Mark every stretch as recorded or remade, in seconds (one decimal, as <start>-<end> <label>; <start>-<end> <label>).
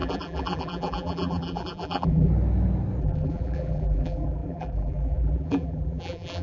0.0-2.3 remade; 2.3-3.0 recorded; 3.0-6.4 remade